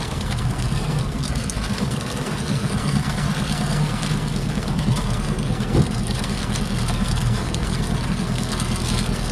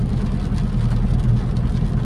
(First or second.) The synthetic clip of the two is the first